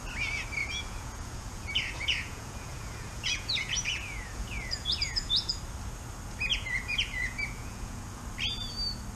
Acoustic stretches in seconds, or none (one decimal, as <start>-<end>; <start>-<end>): 0.0-0.6; 5.6-6.5; 8.2-9.2

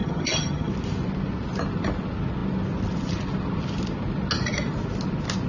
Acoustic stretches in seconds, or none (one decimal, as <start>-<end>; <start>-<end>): 0.7-5.5